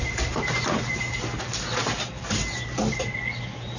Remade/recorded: recorded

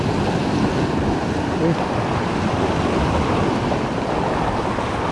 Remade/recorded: recorded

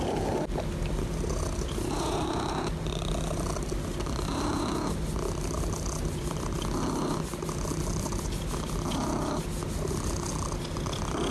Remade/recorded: recorded